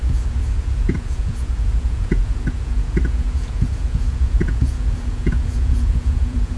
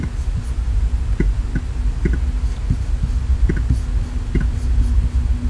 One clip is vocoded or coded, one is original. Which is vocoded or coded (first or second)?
first